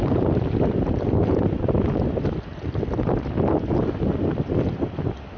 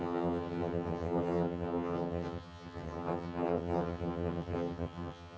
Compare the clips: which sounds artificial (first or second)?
second